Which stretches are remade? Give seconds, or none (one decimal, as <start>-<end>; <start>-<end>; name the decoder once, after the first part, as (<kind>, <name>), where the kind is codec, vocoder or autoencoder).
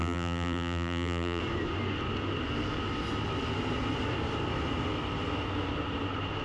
0.0-1.4 (vocoder, BigVGAN v2)